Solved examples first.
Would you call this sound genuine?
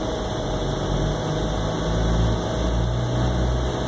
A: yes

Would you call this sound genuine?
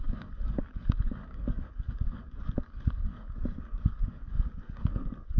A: no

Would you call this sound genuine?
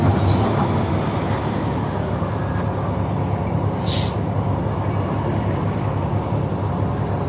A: yes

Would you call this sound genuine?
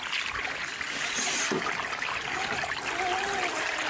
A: yes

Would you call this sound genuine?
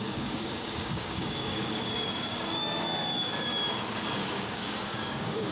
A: no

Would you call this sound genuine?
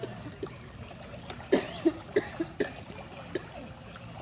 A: yes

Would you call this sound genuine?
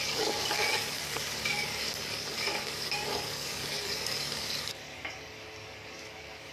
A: no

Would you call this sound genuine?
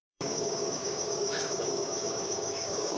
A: no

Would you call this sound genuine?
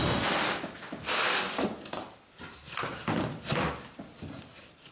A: yes